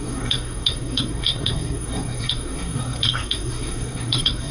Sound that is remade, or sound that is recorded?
remade